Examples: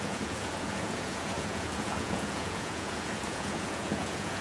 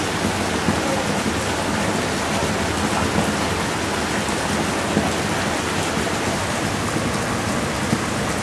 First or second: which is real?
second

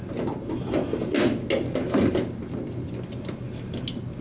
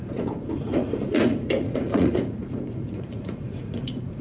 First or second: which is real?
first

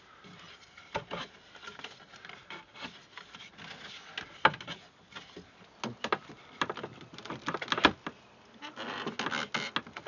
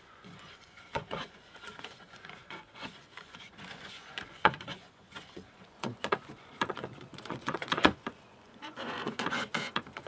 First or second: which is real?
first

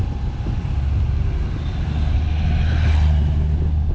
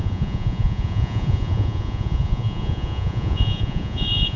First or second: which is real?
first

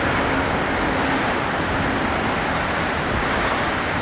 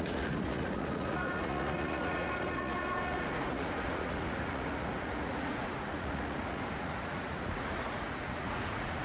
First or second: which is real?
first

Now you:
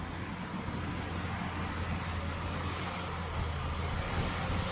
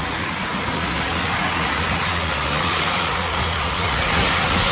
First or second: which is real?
first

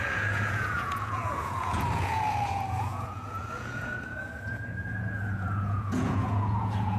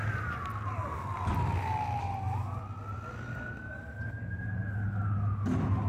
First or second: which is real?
second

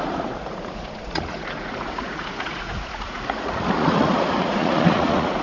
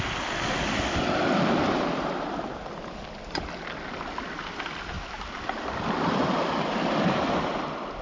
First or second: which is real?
second